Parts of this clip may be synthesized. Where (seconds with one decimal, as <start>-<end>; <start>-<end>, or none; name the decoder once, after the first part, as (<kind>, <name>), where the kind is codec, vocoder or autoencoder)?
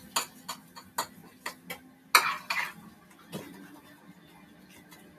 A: none